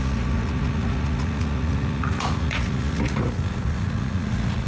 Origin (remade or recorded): remade